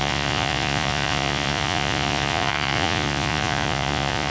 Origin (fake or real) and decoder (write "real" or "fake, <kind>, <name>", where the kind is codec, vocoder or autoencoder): fake, vocoder, Vocos